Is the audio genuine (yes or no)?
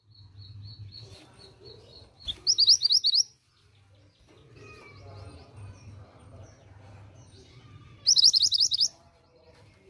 yes